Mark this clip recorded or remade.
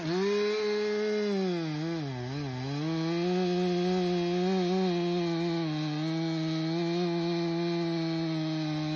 recorded